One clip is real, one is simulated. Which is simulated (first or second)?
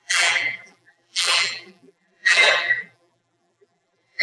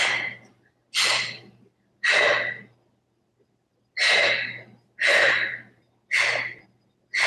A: first